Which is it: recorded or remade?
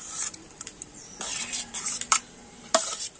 remade